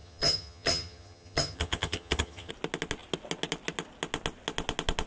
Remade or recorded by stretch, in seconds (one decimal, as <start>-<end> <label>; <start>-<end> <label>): 0.0-2.5 remade; 2.5-5.1 recorded